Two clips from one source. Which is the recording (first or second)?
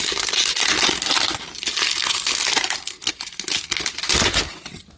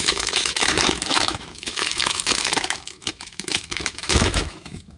first